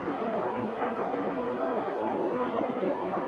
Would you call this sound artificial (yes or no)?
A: yes